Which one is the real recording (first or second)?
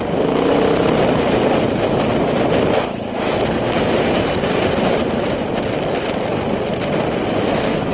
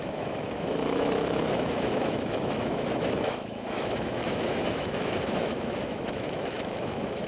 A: first